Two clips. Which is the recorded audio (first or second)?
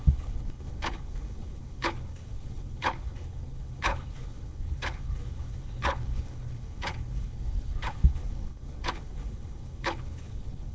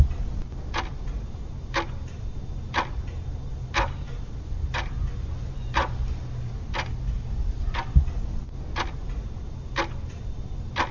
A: second